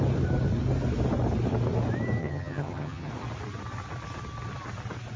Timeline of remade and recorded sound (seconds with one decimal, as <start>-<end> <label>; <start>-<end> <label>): 0.0-2.2 recorded; 2.2-3.1 remade; 3.1-5.2 recorded